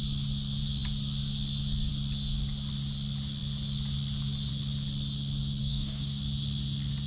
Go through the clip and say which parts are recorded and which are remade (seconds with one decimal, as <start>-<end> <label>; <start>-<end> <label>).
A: 0.0-5.6 recorded; 5.6-6.2 remade; 6.2-7.1 recorded